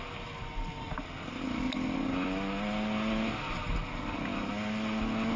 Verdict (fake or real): real